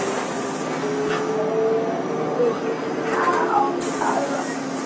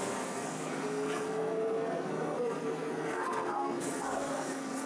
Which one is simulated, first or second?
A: second